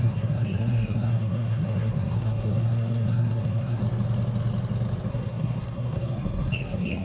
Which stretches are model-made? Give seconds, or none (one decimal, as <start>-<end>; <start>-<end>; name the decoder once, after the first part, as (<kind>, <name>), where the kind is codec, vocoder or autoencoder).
0.0-3.8 (codec, SNAC); 5.1-7.0